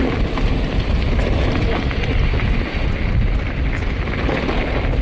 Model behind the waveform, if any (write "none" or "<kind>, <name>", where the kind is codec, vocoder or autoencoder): none